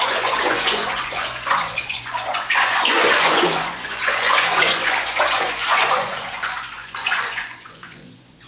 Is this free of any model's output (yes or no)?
no